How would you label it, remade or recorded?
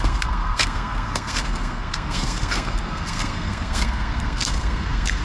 remade